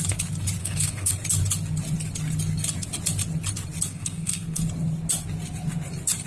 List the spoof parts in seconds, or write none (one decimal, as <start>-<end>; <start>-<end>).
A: 0.6-1.1; 3.9-4.6